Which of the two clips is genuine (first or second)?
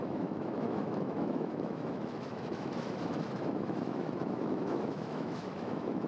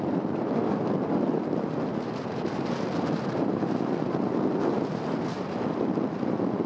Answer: second